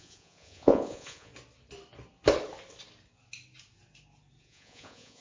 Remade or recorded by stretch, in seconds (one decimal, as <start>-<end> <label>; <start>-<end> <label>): 0.0-1.3 remade; 1.3-4.4 recorded; 4.4-5.2 remade